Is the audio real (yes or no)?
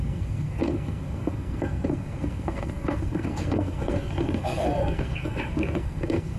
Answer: no